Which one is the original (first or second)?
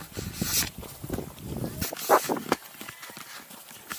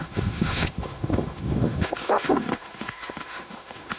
first